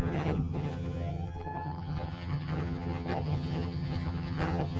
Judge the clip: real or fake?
fake